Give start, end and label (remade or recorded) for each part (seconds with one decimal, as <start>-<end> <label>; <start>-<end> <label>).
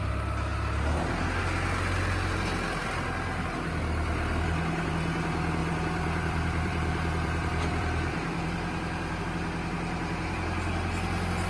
0.0-3.8 recorded; 3.8-4.9 remade; 4.9-5.6 recorded; 5.6-9.2 remade; 9.2-11.5 recorded